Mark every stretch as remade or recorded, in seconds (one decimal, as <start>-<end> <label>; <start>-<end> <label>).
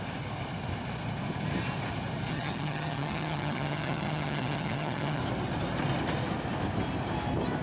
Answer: 0.0-2.3 recorded; 2.3-5.2 remade; 5.2-7.6 recorded